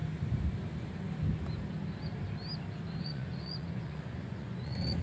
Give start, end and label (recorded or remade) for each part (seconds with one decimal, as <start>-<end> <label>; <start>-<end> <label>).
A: 0.0-3.0 recorded; 3.0-5.0 remade